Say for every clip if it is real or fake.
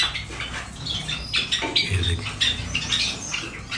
real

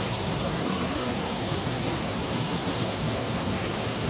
fake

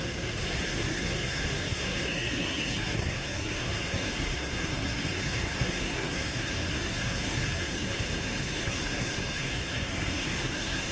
fake